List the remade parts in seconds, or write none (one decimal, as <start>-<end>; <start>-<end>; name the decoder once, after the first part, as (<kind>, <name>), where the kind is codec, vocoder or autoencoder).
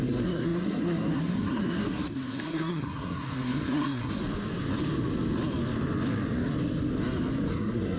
0.0-4.2 (codec, SNAC); 7.5-8.0